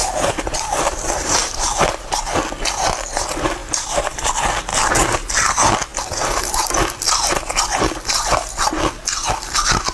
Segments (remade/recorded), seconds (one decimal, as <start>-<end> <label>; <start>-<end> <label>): 0.0-2.4 remade; 2.4-3.6 recorded; 3.6-4.3 remade; 4.3-4.7 recorded; 4.7-5.3 remade; 5.3-9.9 recorded